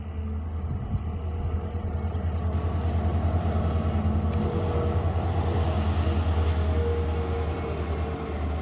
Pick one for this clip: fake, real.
real